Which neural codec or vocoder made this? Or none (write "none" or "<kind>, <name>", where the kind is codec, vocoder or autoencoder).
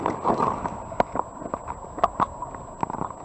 none